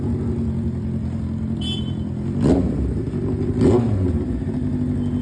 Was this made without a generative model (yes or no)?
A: yes